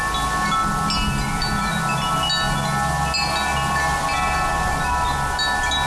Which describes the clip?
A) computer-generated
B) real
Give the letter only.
B